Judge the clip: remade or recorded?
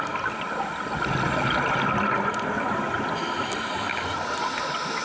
recorded